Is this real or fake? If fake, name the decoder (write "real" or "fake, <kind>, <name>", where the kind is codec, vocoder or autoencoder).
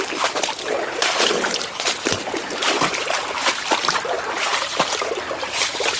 fake, vocoder, BigVGAN v2